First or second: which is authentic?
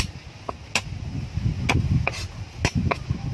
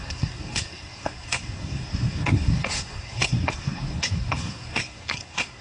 first